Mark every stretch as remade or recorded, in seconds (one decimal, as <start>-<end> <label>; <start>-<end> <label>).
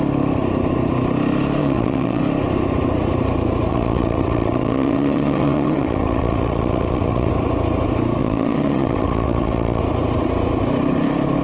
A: 0.0-1.6 recorded; 1.6-2.2 remade; 2.2-3.7 recorded; 3.7-7.3 remade; 7.3-8.2 recorded; 8.2-9.8 remade; 9.8-11.4 recorded